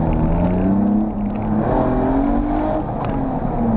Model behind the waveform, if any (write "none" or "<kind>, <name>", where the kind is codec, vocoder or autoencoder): none